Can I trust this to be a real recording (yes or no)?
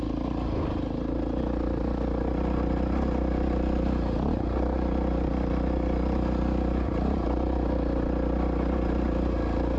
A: yes